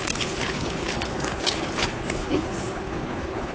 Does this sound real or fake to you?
fake